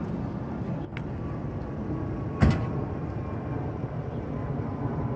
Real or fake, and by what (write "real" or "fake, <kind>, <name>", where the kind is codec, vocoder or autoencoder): real